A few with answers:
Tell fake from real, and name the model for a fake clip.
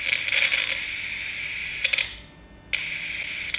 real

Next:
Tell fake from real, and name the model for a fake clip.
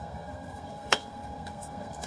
fake, codec, SNAC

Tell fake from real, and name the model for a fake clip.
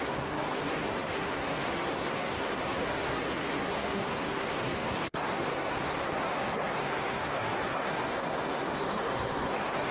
fake, codec, SNAC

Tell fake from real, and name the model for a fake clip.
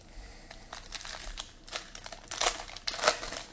real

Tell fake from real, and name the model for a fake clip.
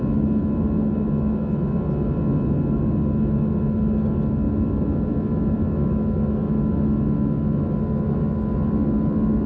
real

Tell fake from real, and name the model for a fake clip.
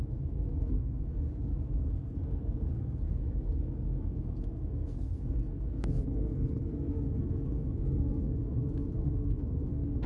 fake, codec, SNAC